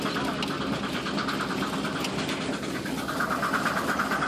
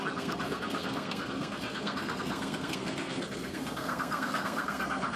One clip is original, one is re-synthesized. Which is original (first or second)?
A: first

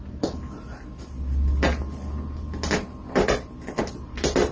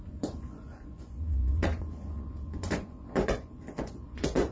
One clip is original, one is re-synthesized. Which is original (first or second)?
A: first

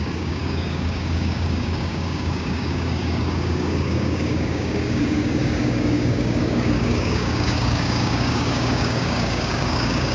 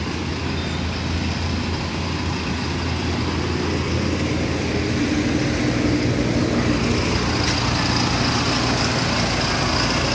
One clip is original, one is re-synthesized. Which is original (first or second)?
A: second